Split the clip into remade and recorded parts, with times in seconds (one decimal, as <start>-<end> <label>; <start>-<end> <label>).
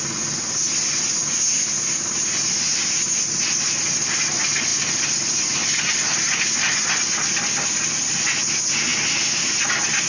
0.0-10.1 recorded